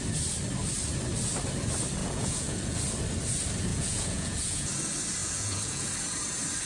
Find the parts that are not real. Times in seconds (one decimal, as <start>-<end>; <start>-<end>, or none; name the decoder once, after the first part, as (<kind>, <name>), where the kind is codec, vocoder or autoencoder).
2.0-2.8 (vocoder, Vocos); 3.7-4.7; 5.2-5.9